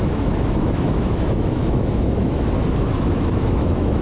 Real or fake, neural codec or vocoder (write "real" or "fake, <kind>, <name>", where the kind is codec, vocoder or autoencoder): fake, autoencoder, DAC-VAE